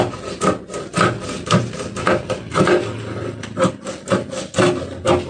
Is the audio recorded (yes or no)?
yes